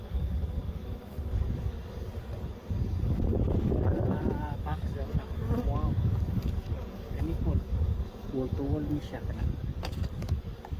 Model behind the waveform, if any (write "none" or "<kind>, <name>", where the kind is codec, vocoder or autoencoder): codec, DAC